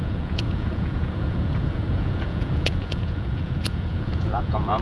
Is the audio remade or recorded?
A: remade